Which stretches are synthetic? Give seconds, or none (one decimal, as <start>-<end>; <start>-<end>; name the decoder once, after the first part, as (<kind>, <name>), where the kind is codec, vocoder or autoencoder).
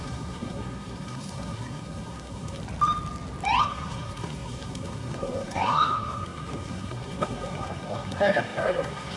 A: 0.0-2.6 (codec, SNAC); 3.6-9.2